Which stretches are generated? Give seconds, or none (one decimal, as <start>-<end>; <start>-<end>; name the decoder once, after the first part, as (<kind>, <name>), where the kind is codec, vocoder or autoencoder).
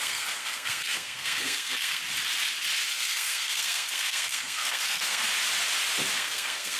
0.0-2.0 (codec, SNAC); 2.9-5.2; 6.1-6.8